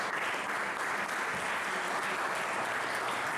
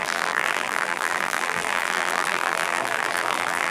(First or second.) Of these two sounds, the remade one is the second